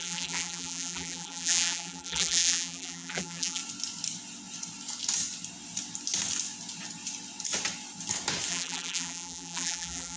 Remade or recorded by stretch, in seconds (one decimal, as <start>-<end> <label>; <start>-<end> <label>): 0.0-3.6 remade; 3.6-8.5 recorded; 8.5-10.2 remade